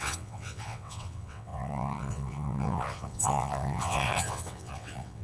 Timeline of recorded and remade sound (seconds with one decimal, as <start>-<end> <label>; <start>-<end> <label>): 0.0-5.2 remade